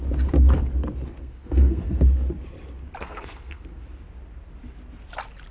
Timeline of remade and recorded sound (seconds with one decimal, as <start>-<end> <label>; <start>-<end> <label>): 0.0-1.2 recorded; 1.2-1.9 remade; 1.9-3.0 recorded; 3.0-3.8 remade; 3.8-5.5 recorded